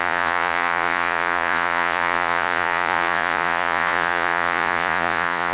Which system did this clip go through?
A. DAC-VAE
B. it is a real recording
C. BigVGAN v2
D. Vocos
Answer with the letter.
D